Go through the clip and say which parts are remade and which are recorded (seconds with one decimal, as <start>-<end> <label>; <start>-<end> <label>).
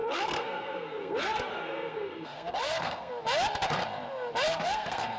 0.0-3.1 remade; 3.1-4.5 recorded; 4.5-5.2 remade